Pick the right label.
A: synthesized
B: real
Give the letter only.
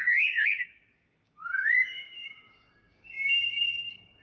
A